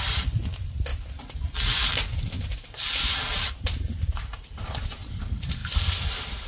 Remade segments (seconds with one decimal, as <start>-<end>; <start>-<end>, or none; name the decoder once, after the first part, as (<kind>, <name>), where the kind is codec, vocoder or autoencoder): 2.5-4.5 (vocoder, BigVGAN v2)